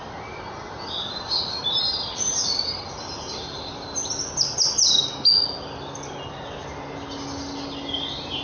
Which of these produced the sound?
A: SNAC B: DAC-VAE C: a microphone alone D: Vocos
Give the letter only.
C